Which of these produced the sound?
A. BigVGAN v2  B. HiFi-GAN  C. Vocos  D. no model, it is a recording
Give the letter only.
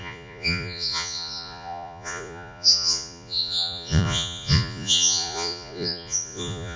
C